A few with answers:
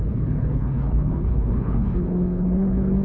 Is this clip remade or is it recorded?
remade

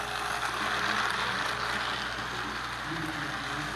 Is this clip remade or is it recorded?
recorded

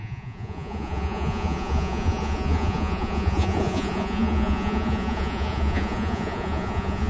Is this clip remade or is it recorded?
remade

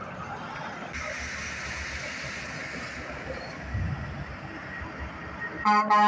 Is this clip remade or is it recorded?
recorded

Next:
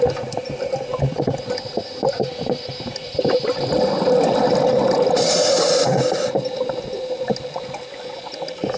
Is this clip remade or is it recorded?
recorded